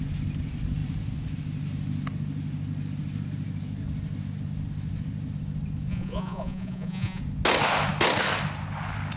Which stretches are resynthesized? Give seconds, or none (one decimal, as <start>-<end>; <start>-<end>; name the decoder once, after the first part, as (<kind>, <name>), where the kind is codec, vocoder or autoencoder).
5.9-7.2 (vocoder, Vocos)